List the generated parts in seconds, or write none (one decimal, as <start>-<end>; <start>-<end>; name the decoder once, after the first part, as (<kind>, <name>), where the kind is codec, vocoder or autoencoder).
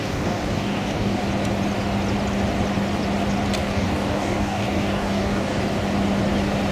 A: 0.0-1.2 (codec, DAC); 3.6-5.6